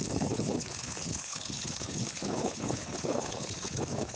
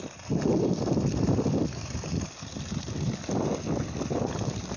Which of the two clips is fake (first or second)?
first